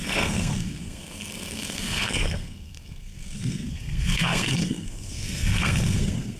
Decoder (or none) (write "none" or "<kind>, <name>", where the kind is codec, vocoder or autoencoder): codec, SNAC